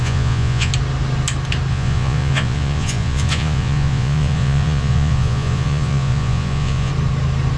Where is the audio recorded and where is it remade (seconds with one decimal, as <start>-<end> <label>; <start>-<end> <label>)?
0.0-0.7 remade; 0.7-1.7 recorded; 1.7-6.9 remade; 6.9-7.6 recorded